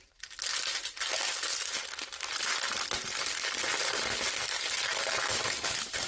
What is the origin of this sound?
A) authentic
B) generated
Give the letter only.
A